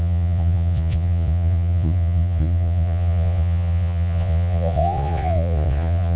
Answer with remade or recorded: remade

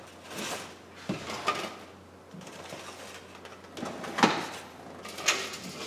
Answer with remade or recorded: recorded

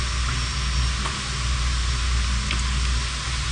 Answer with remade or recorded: recorded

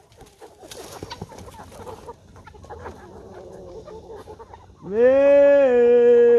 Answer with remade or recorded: recorded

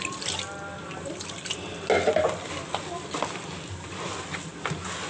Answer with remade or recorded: recorded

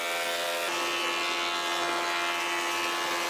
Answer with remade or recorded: recorded